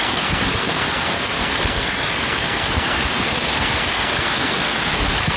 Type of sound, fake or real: fake